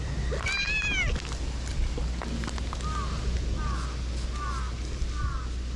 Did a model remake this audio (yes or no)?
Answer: no